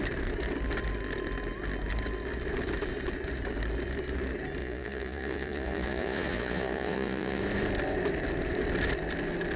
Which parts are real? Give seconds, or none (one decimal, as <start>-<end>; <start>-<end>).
0.0-4.6; 7.4-9.6